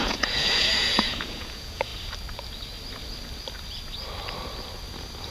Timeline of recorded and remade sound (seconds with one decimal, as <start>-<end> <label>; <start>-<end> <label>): 0.0-1.9 remade; 1.9-5.3 recorded